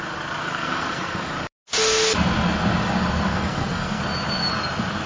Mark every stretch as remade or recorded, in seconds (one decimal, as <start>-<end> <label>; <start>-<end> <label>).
0.0-0.4 recorded; 0.4-1.3 remade; 1.3-3.3 recorded; 3.3-4.0 remade; 4.0-5.1 recorded